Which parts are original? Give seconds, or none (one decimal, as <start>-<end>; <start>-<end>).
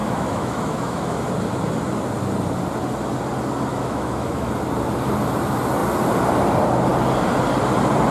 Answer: 1.3-3.7; 4.5-8.1